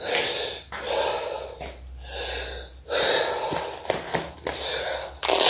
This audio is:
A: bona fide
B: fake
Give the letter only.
A